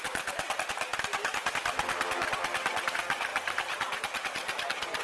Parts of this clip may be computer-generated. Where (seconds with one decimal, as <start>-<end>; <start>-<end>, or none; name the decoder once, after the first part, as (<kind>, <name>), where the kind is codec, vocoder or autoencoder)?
none